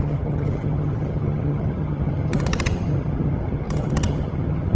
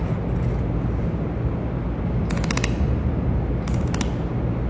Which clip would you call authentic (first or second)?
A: second